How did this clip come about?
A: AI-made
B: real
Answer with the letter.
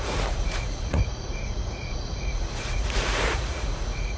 A